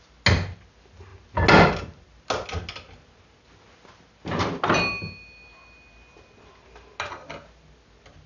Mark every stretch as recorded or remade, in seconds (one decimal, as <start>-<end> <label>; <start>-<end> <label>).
0.0-8.3 recorded